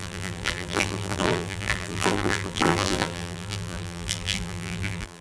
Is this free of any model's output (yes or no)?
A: no